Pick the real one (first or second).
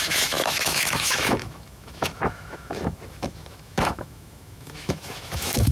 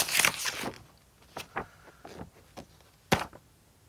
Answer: second